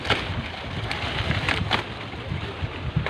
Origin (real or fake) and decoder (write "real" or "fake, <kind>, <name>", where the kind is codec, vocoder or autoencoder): real